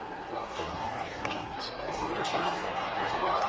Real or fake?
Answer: fake